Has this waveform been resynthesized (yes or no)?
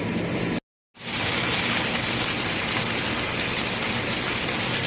no